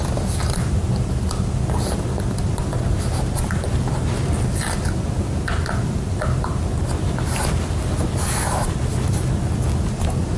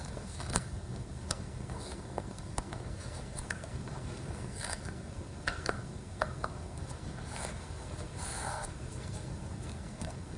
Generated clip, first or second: second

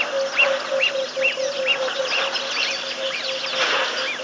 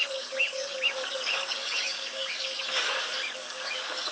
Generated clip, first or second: second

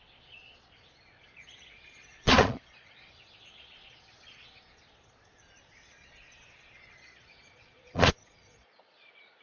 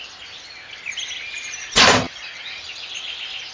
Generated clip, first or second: first